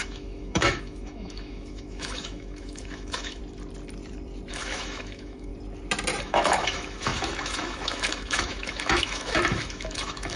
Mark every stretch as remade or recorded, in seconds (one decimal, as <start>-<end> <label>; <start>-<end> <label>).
0.0-3.4 remade; 3.4-4.5 recorded; 4.5-5.5 remade; 5.5-6.2 recorded; 6.2-10.4 remade